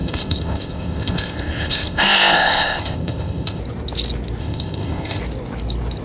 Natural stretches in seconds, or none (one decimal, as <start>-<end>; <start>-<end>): 3.6-4.4; 5.2-6.0